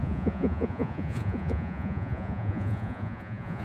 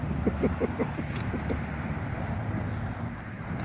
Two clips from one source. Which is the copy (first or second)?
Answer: first